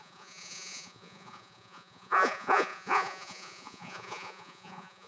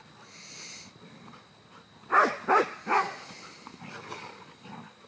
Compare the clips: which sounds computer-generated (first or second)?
first